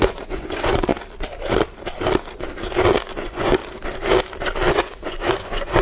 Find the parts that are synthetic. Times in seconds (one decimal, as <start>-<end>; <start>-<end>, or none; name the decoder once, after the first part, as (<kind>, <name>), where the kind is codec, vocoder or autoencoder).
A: 0.0-0.9 (vocoder, Vocos); 3.1-3.6; 4.7-5.8